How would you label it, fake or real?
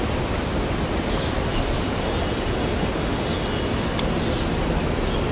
real